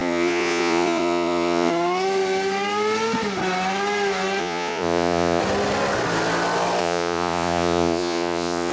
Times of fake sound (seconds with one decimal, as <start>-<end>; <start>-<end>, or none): 0.0-1.7; 4.4-5.4; 6.8-8.7